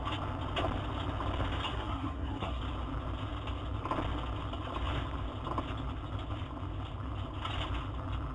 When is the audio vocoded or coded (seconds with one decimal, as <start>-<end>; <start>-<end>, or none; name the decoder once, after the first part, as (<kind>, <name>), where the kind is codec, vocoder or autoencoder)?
1.7-2.6 (codec, SNAC)